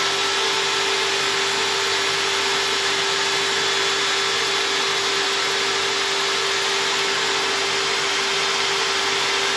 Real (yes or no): yes